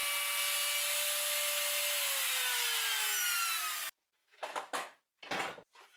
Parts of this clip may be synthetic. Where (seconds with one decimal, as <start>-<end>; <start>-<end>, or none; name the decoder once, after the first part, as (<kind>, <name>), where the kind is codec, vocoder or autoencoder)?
4.2-5.0 (autoencoder, DAC-VAE)